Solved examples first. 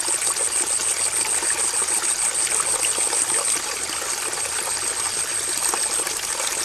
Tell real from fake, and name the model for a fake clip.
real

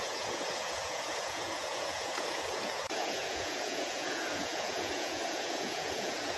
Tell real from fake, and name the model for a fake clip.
fake, vocoder, Vocos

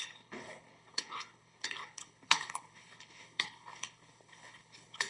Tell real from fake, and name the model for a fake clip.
fake, codec, HILCodec